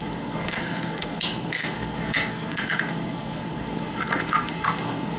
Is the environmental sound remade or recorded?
remade